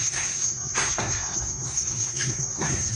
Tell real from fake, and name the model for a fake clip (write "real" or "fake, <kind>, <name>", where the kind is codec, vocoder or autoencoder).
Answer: fake, codec, SNAC